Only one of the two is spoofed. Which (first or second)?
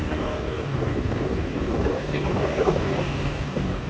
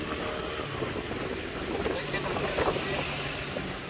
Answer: first